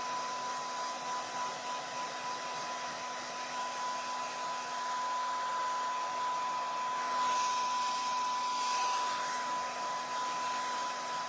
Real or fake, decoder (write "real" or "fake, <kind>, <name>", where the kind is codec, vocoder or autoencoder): real